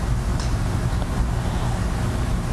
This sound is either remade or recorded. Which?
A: recorded